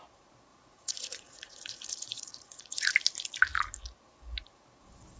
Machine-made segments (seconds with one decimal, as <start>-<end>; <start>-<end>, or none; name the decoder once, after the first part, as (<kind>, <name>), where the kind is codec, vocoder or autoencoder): 0.5-2.9 (vocoder, Vocos)